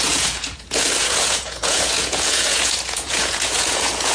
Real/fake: fake